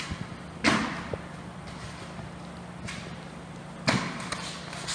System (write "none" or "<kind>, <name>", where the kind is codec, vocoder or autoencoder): none